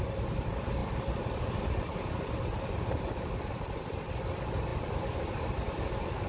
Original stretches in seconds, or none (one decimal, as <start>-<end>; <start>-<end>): 0.0-6.3

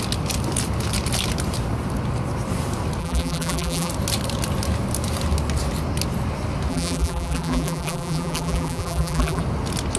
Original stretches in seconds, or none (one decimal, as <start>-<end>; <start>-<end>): 0.0-3.0; 3.9-6.7; 9.4-10.0